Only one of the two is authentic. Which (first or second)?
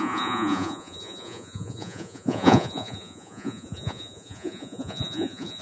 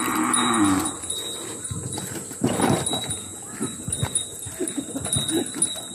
second